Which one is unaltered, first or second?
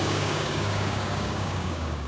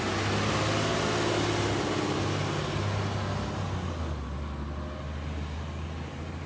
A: second